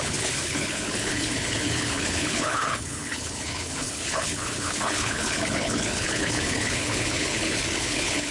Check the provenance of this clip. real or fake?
fake